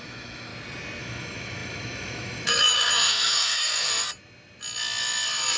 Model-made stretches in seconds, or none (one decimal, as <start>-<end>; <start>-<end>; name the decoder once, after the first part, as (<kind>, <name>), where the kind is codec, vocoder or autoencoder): 0.0-0.5 (autoencoder, DAC-VAE); 1.0-3.9